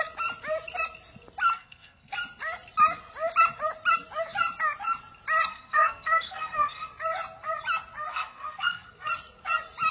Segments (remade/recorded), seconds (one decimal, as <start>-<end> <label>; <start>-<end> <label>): 0.0-1.5 recorded; 1.5-2.1 remade; 2.1-5.5 recorded; 5.5-6.9 remade; 6.9-8.1 recorded; 8.1-9.1 remade; 9.1-9.9 recorded